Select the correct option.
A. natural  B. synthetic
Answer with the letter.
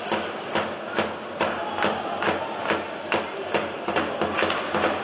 A